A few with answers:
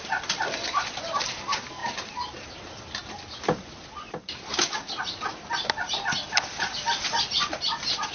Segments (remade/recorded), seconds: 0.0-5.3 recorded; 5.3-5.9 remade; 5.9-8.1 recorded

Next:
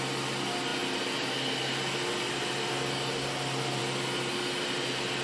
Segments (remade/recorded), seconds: 0.0-5.2 recorded

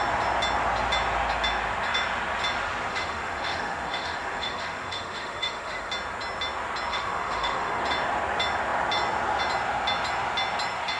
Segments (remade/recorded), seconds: 0.0-2.9 recorded; 2.9-5.9 remade; 5.9-6.9 recorded; 6.9-7.8 remade; 7.8-11.0 recorded

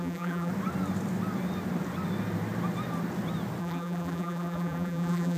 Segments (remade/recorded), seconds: 0.0-0.5 remade; 0.5-3.6 recorded; 3.6-5.4 remade

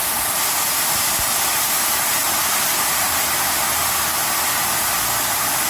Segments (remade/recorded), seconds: 0.0-5.7 recorded

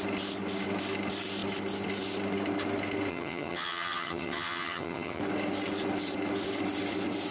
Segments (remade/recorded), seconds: 0.0-3.1 recorded; 3.1-5.2 remade; 5.2-7.3 recorded

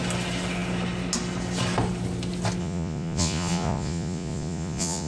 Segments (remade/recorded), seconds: 0.0-2.6 recorded; 2.6-5.1 remade

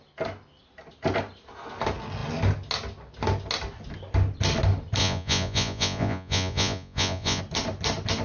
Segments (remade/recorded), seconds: 0.0-5.0 recorded; 5.0-7.4 remade; 7.4-8.2 recorded